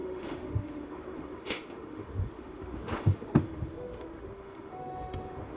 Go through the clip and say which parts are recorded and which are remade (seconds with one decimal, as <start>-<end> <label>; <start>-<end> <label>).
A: 0.0-5.6 remade